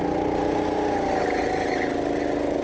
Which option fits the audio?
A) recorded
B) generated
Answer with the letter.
A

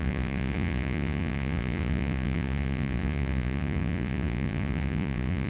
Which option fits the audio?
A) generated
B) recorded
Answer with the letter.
A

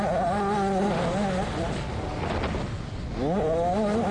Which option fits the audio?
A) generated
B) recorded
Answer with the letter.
B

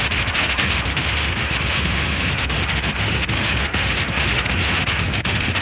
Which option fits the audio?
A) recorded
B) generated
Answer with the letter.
B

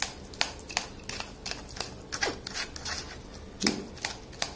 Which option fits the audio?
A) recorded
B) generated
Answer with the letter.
A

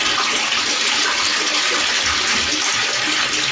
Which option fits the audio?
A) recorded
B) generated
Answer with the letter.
A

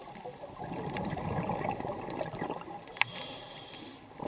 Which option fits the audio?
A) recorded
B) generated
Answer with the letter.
A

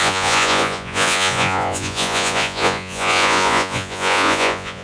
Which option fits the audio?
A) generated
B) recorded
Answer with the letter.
A